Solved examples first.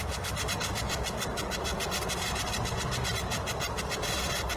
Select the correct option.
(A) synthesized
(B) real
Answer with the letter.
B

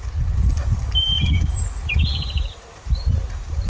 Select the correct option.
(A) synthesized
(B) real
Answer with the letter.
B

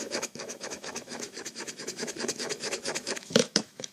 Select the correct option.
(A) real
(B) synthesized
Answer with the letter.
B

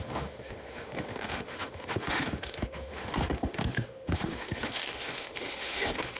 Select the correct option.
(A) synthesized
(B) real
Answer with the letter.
A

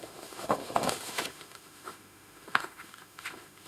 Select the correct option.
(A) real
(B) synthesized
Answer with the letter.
B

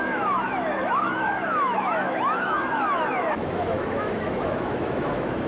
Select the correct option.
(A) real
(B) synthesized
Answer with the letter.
B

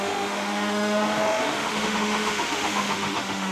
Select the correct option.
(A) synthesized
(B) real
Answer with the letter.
A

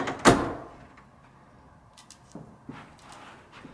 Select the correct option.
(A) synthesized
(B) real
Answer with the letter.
B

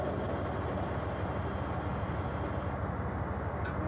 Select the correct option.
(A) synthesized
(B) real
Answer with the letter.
B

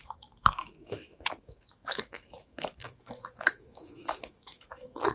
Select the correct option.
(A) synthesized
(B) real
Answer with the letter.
A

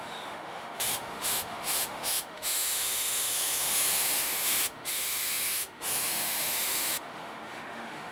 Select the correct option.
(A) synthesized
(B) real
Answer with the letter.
A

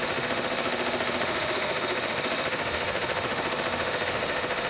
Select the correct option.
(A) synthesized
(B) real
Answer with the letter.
A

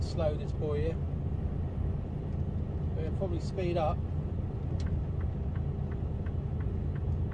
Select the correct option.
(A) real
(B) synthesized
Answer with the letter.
A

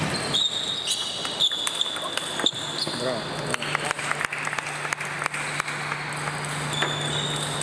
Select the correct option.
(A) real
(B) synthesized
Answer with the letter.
A